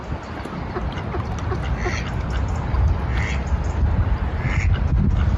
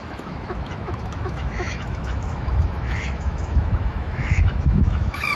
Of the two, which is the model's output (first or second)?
second